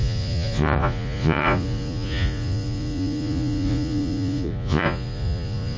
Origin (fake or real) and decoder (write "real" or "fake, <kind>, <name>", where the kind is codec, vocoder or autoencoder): fake, vocoder, Vocos